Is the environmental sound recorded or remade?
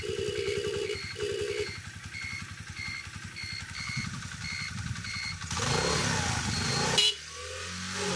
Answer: recorded